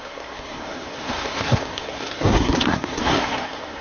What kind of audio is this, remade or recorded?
remade